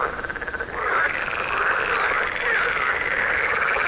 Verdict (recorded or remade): recorded